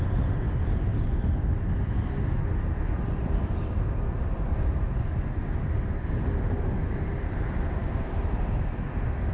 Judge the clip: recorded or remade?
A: recorded